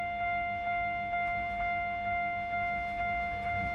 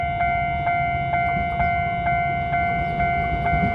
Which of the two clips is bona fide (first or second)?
second